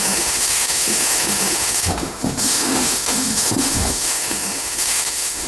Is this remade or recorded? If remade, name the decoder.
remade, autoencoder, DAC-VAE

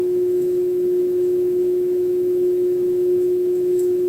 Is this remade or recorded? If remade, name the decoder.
remade, autoencoder, DAC-VAE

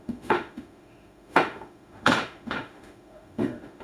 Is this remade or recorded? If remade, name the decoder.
remade, autoencoder, DAC-VAE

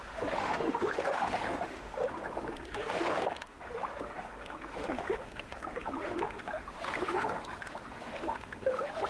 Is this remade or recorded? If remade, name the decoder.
remade, autoencoder, DAC-VAE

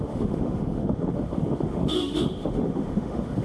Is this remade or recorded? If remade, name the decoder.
remade, autoencoder, DAC-VAE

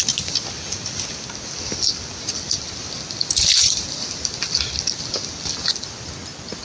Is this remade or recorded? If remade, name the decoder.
recorded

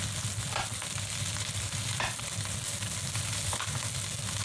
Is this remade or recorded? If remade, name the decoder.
recorded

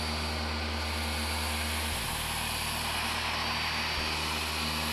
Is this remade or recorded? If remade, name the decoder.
recorded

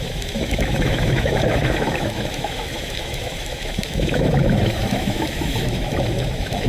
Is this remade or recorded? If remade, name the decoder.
remade, autoencoder, DAC-VAE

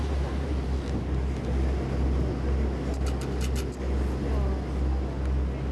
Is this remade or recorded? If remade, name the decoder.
recorded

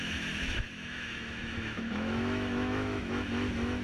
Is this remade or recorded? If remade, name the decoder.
remade, autoencoder, DAC-VAE